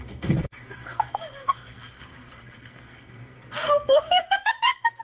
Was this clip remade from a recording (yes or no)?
yes